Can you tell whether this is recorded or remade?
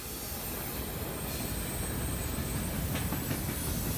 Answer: recorded